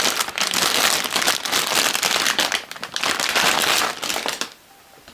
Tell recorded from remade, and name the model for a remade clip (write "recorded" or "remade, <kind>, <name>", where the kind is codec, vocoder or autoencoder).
recorded